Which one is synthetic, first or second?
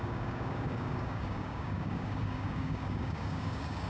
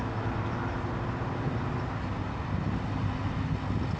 first